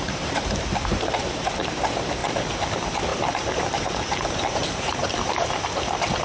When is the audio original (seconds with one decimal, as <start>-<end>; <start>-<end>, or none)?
2.2-2.7; 5.0-6.2